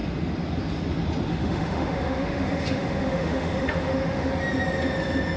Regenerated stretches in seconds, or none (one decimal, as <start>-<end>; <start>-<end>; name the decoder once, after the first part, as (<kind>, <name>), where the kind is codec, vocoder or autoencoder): 1.3-4.3 (autoencoder, DAC-VAE)